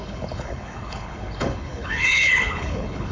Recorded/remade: remade